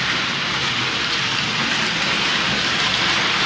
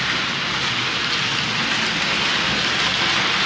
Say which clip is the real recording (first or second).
second